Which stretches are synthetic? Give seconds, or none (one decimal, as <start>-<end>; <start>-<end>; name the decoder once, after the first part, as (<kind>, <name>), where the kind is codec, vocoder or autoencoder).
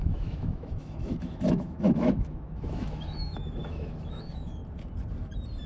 0.0-4.6 (autoencoder, DAC-VAE)